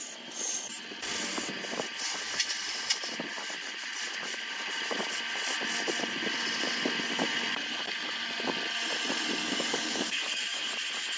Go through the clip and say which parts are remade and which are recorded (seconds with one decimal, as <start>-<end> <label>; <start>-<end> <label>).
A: 0.0-9.4 recorded; 9.4-10.7 remade; 10.7-11.2 recorded